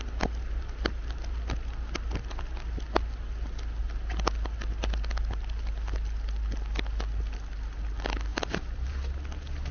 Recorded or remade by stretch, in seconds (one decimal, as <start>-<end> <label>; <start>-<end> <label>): 0.0-8.3 recorded; 8.3-9.1 remade; 9.1-9.7 recorded